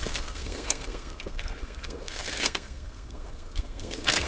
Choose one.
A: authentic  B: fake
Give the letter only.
B